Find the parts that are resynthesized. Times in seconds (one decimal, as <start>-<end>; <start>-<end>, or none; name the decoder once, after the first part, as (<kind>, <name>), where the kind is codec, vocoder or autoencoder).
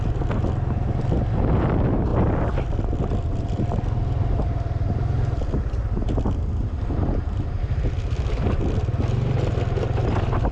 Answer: none